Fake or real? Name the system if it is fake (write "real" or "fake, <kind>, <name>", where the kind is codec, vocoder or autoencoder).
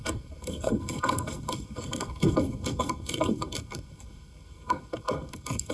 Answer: fake, codec, SNAC